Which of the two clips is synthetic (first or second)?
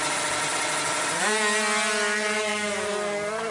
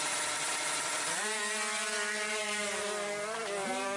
second